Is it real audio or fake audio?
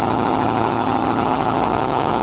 fake